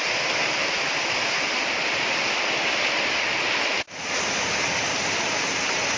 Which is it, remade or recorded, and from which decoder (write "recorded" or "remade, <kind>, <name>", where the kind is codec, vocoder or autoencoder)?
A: recorded